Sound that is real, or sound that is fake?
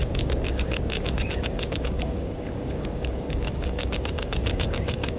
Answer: fake